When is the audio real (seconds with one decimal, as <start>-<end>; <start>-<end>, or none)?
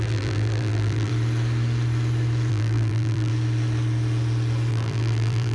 1.1-2.5; 3.3-4.7